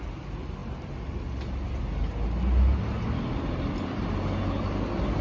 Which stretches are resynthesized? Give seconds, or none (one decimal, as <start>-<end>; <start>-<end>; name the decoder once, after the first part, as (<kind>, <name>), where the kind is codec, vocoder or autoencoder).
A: none